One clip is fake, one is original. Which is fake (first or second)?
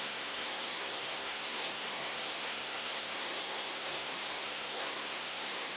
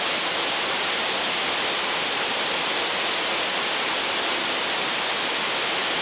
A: first